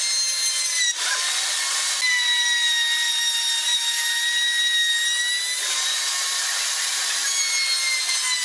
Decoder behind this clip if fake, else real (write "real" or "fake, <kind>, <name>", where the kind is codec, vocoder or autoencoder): real